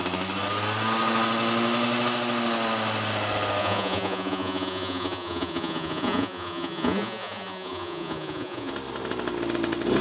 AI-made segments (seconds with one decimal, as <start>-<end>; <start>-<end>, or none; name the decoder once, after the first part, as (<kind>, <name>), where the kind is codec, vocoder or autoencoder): 3.6-8.7 (vocoder, Vocos)